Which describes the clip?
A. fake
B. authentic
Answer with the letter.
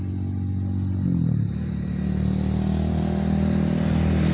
B